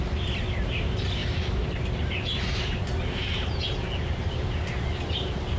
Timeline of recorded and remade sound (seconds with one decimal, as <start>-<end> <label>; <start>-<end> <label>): 0.0-5.6 recorded